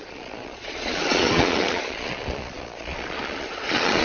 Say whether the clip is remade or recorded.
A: remade